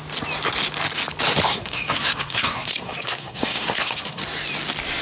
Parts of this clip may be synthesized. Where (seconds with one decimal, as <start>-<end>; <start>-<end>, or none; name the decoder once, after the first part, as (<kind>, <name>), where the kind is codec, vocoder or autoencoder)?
1.5-4.2 (codec, SNAC)